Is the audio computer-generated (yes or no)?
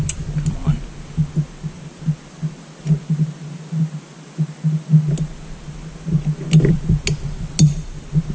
no